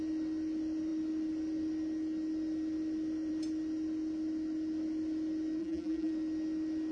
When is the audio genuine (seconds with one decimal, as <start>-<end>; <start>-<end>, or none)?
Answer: 0.0-5.6; 6.1-6.9